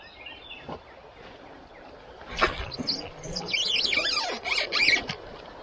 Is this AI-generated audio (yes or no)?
no